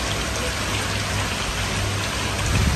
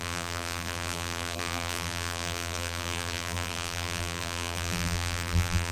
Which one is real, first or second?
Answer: first